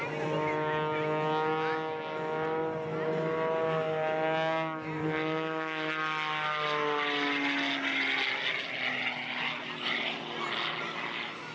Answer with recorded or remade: recorded